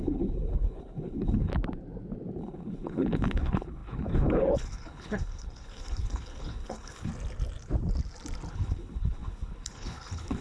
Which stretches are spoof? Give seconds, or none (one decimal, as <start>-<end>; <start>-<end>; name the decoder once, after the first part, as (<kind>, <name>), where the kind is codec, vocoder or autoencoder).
0.0-1.5 (codec, HILCodec); 2.4-7.1; 8.5-10.4